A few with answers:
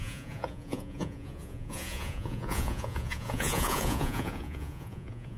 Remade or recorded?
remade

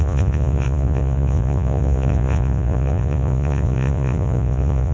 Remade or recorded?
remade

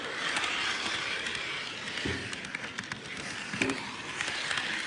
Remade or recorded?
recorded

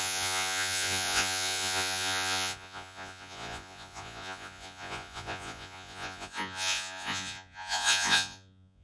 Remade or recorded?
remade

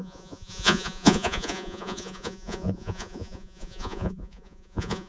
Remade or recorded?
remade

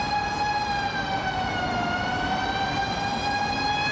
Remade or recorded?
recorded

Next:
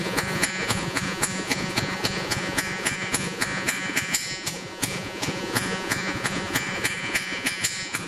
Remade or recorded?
remade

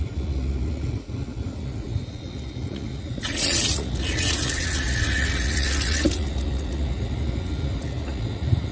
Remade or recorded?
remade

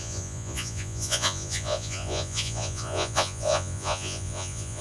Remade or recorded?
remade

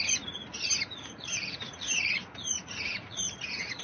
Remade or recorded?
remade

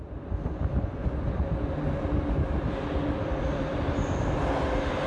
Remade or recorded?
recorded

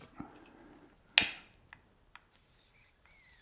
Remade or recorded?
recorded